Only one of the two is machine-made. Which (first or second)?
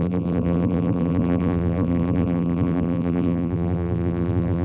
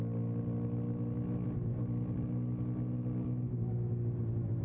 first